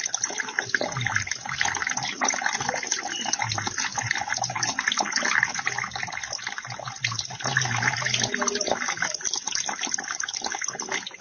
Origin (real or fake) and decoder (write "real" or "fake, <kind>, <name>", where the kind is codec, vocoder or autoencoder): real